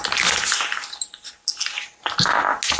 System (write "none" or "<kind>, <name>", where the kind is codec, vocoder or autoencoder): none